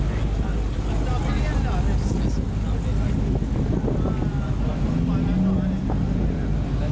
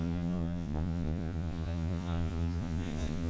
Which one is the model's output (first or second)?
second